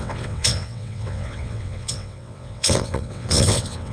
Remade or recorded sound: remade